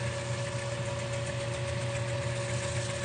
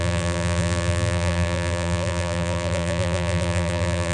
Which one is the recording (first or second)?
first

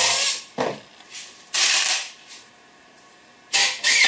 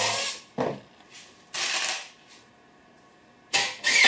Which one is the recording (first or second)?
second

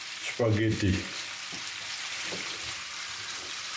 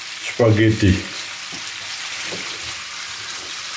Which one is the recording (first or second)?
second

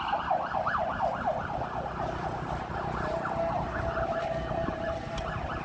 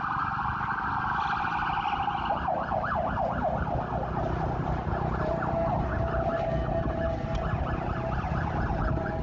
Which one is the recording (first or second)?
second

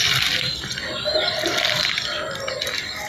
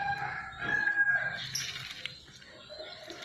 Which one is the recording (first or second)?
second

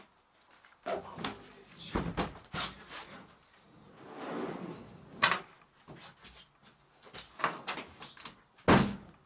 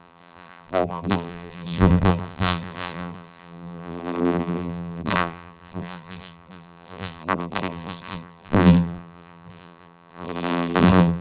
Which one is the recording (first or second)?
first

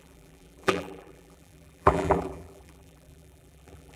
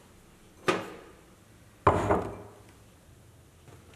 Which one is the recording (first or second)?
second